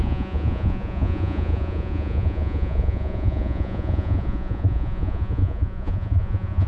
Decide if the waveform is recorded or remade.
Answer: remade